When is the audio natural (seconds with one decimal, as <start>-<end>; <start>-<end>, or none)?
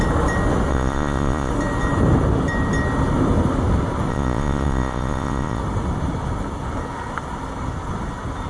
0.0-0.7; 1.5-4.1; 5.6-8.5